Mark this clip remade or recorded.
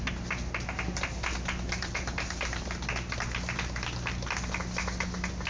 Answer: recorded